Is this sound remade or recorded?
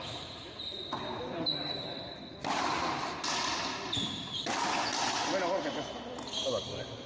recorded